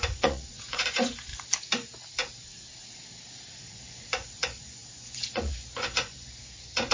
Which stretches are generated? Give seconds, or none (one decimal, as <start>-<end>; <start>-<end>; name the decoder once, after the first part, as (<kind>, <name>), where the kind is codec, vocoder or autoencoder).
0.0-1.3 (vocoder, Vocos); 3.6-6.9